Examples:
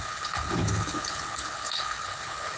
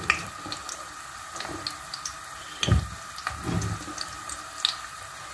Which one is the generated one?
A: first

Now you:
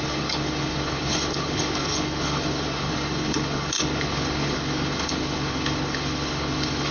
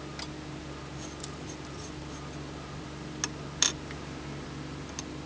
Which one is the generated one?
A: first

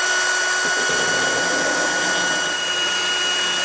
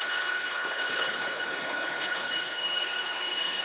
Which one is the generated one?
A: second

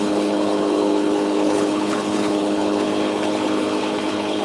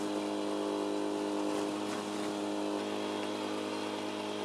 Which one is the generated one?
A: first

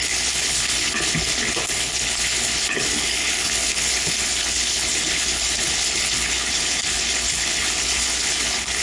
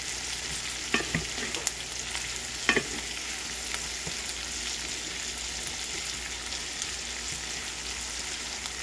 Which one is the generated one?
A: first